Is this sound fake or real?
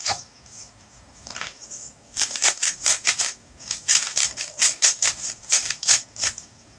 fake